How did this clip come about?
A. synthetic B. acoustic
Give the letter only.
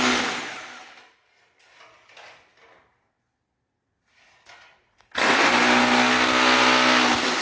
B